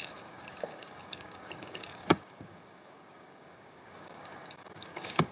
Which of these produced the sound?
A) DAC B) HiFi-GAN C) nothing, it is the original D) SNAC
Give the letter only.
A